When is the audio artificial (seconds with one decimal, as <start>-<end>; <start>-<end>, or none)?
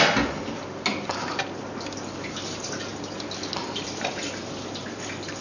none